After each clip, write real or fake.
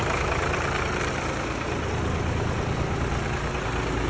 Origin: real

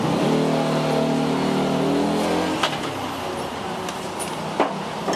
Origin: real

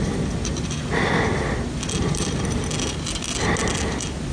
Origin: real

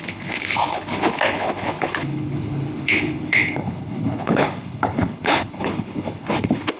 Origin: fake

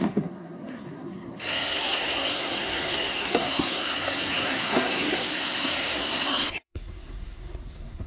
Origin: fake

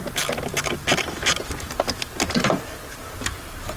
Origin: real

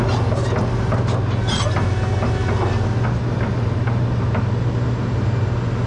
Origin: real